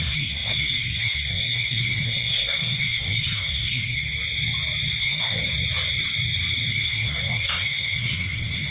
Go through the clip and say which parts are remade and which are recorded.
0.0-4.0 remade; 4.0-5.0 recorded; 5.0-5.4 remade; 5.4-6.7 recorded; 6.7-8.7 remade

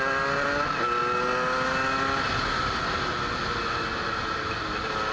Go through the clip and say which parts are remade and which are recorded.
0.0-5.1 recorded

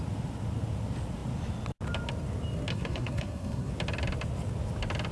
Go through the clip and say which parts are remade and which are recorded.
0.0-2.7 recorded; 2.7-3.7 remade; 3.7-5.1 recorded

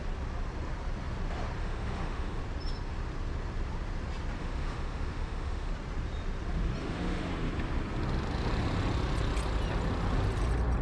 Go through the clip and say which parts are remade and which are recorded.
0.0-1.6 recorded; 1.6-2.4 remade; 2.4-4.4 recorded; 4.4-5.7 remade; 5.7-6.8 recorded; 6.8-7.3 remade; 7.3-10.8 recorded

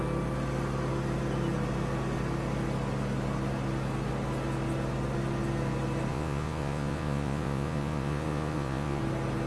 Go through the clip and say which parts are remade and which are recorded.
0.0-6.1 recorded; 6.1-9.0 remade; 9.0-9.5 recorded